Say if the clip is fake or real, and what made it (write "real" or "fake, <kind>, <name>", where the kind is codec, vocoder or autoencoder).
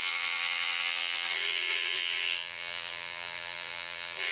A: fake, vocoder, BigVGAN v2